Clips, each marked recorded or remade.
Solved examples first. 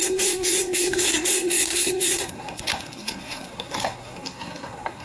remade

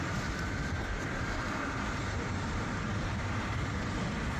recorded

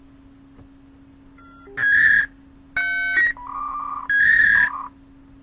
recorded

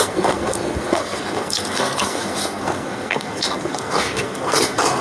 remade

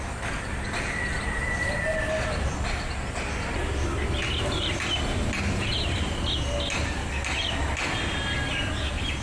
recorded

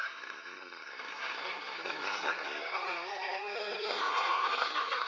remade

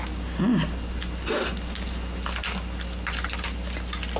recorded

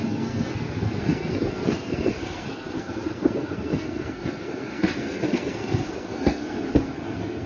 remade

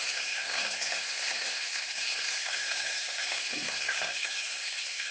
remade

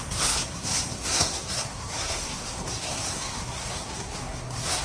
remade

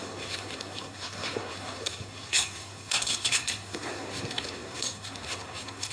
remade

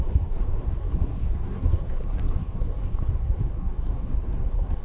remade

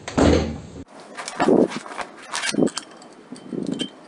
recorded